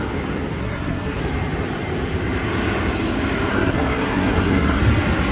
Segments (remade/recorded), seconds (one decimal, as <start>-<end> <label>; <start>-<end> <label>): 0.0-0.6 recorded; 0.6-1.2 remade; 1.2-3.5 recorded; 3.5-4.8 remade; 4.8-5.3 recorded